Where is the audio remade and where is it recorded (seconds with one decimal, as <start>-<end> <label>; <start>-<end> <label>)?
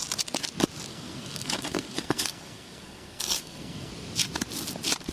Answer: 0.0-0.9 recorded; 0.9-3.9 remade; 3.9-5.1 recorded